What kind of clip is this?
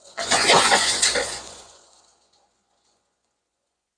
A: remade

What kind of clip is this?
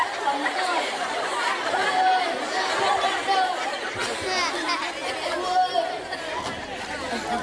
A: recorded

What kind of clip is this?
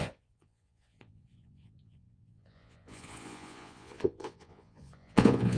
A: remade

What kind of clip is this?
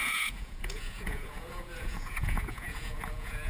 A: remade